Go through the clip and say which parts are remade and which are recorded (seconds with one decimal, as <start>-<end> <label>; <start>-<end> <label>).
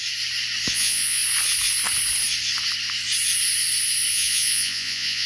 0.0-0.7 recorded; 0.7-1.2 remade; 1.2-4.1 recorded; 4.1-5.3 remade